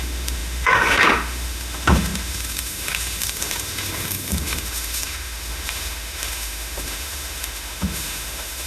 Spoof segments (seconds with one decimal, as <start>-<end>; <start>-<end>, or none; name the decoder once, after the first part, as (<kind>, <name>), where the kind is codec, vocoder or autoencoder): 0.0-8.7 (autoencoder, DAC-VAE)